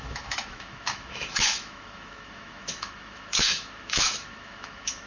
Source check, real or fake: fake